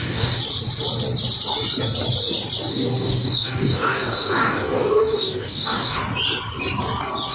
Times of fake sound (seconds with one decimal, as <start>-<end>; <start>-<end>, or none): 0.0-0.4; 2.7-6.0